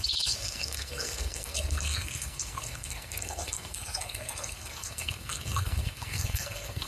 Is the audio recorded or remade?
remade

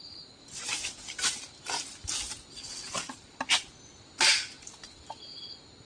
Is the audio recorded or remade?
recorded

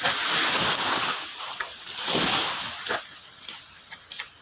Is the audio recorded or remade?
recorded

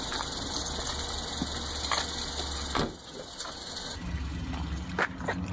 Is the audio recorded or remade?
recorded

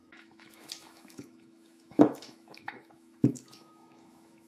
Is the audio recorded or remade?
remade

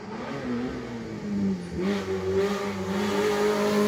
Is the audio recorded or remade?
recorded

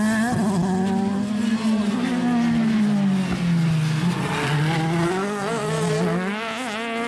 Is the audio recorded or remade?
recorded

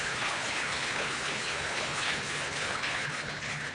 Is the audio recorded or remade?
remade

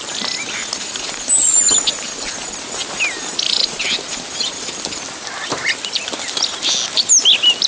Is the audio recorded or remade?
recorded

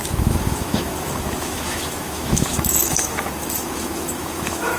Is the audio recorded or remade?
remade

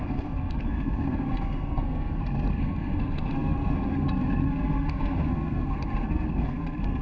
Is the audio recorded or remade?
remade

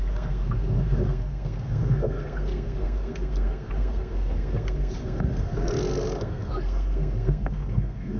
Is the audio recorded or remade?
remade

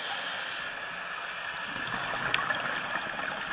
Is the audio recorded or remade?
recorded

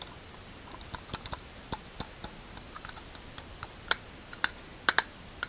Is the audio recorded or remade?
recorded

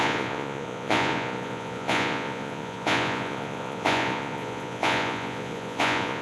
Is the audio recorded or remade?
remade